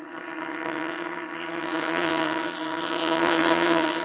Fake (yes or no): yes